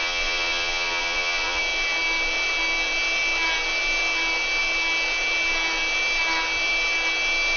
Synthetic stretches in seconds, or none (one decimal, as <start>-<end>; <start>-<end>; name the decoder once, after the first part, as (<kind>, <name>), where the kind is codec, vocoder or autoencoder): 0.0-1.6 (vocoder, Vocos)